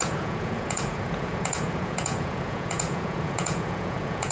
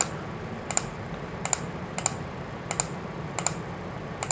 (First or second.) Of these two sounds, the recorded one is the second